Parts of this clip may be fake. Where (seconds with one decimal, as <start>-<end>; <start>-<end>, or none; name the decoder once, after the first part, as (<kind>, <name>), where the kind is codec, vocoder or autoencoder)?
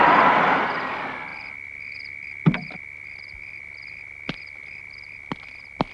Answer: none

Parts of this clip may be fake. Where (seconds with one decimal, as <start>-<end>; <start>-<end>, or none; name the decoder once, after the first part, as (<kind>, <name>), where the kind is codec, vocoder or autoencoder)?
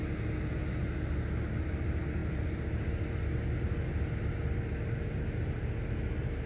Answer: none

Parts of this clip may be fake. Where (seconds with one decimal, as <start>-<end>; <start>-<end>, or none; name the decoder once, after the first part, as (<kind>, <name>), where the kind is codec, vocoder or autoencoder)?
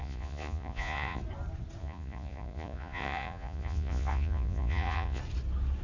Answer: 0.0-1.2 (vocoder, Vocos); 1.8-5.2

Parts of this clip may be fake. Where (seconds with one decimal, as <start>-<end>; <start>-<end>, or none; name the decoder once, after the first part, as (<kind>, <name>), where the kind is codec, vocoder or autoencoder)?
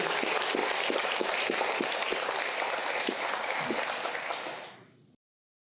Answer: none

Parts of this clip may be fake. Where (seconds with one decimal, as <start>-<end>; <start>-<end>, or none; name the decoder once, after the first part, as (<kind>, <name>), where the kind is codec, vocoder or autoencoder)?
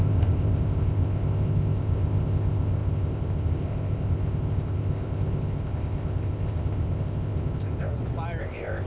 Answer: 0.0-7.9 (codec, ZipCodec); 8.4-8.9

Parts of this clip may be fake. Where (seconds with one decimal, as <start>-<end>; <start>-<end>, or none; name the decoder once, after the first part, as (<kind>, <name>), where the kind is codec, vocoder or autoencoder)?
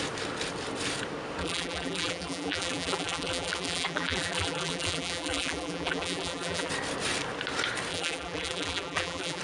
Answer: 1.4-6.7 (vocoder, BigVGAN v2); 7.9-9.4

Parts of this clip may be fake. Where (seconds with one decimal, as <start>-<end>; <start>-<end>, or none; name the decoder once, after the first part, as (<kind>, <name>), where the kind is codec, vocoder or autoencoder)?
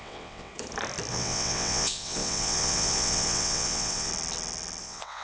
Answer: 0.0-0.5 (vocoder, WaveNeXt); 1.1-4.1; 4.8-5.2